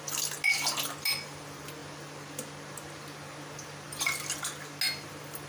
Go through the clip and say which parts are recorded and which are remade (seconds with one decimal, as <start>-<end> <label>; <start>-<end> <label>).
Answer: 0.0-5.5 recorded